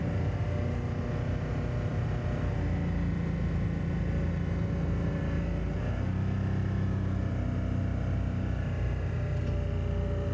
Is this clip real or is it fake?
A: real